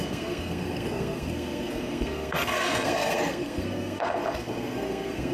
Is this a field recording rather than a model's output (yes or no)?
no